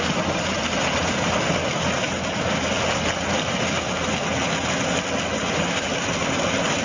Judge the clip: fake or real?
real